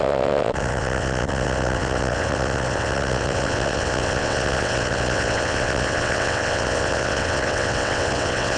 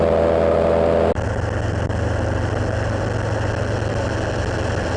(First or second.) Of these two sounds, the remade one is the first